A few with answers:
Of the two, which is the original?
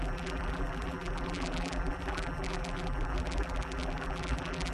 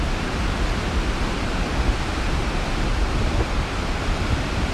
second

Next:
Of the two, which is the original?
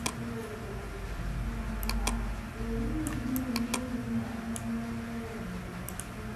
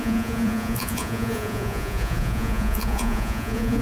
first